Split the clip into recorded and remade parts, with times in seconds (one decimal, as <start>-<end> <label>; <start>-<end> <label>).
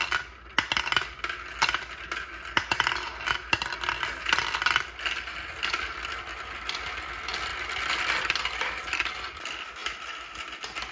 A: 0.0-10.9 recorded